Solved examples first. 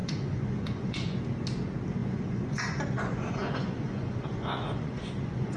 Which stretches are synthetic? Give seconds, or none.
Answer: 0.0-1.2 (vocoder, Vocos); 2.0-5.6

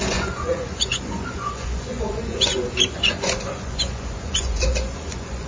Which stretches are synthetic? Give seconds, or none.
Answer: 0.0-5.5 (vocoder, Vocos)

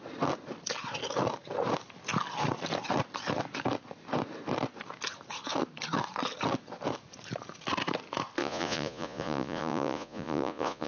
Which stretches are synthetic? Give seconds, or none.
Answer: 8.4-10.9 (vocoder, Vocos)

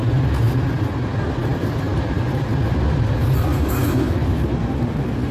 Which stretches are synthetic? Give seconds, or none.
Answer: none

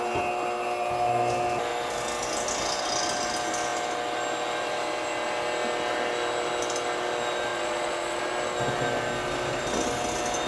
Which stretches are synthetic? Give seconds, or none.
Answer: 7.5-8.2 (vocoder, Vocos)